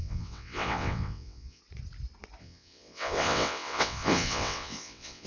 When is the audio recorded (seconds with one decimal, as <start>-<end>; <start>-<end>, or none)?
1.6-2.4